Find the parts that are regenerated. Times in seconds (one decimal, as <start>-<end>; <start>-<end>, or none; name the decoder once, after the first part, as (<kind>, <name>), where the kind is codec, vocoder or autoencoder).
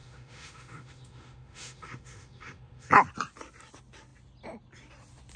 0.0-2.9 (autoencoder, DAC-VAE)